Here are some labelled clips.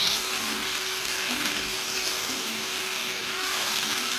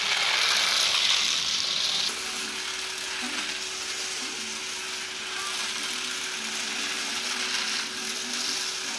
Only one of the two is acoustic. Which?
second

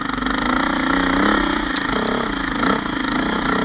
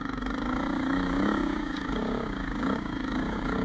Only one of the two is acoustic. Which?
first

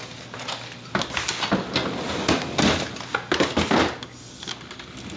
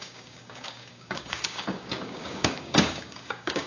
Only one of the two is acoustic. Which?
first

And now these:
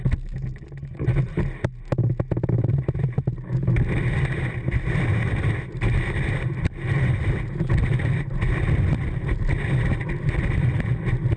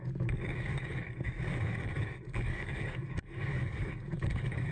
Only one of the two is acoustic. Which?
first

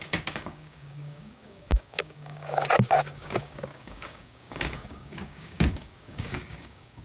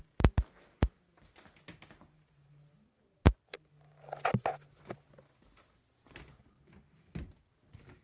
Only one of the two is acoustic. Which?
second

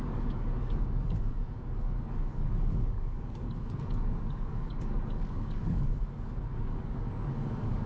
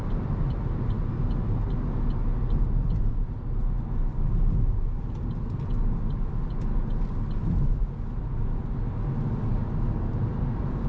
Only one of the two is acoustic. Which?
second